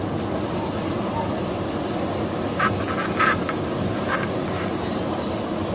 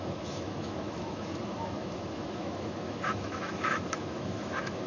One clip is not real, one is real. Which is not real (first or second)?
second